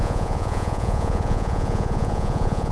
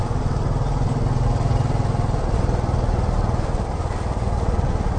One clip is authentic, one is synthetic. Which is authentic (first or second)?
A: second